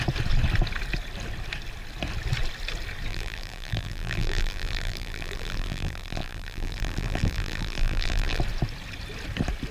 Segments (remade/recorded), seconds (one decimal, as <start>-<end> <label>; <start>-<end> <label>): 0.0-3.1 recorded; 3.1-8.4 remade; 8.4-9.7 recorded